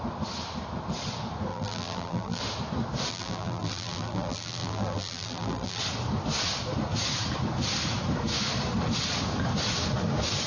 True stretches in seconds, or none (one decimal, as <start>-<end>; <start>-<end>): 0.0-1.5; 2.4-3.1; 5.8-10.5

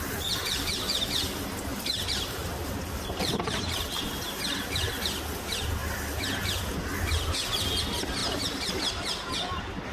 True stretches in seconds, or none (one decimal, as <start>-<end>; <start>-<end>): 0.0-1.7; 4.1-8.2; 8.7-9.9

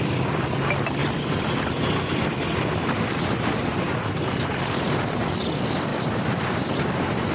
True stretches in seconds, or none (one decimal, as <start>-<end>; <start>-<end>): 0.0-3.6; 4.5-5.9